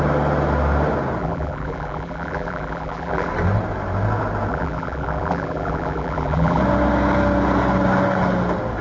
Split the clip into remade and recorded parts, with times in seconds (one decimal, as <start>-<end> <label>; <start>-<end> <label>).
0.0-1.2 recorded; 1.2-3.3 remade; 3.3-4.5 recorded; 4.5-6.6 remade; 6.6-8.8 recorded